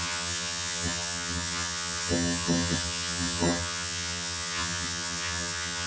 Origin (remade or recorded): remade